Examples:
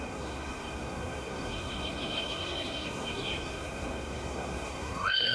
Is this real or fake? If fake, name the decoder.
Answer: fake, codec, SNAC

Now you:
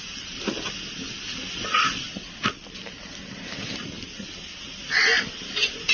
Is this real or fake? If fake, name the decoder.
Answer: real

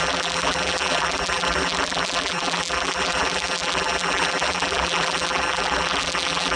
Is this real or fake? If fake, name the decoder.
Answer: fake, vocoder, BigVGAN v2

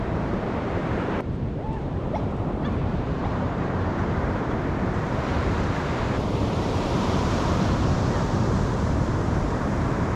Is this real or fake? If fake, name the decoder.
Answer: fake, vocoder, BigVGAN v2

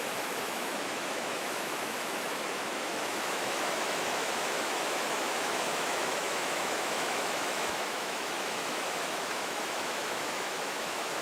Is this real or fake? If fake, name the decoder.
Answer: fake, autoencoder, DAC-VAE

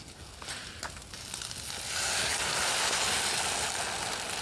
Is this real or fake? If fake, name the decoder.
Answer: real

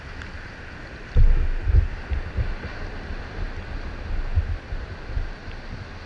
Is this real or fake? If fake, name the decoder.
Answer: real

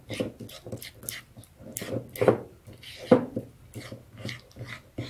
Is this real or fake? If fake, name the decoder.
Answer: real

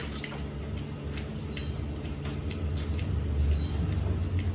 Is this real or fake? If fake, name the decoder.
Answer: real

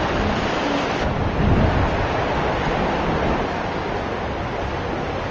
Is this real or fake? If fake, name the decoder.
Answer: real